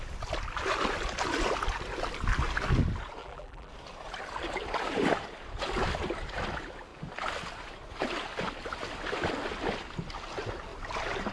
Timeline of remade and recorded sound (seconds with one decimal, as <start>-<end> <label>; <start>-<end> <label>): 0.0-3.2 recorded; 3.2-3.7 remade; 3.7-11.3 recorded